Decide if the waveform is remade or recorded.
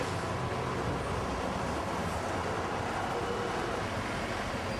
recorded